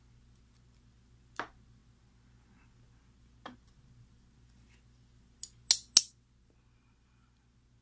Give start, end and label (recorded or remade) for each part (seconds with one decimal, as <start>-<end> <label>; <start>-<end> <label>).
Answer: 0.0-7.8 recorded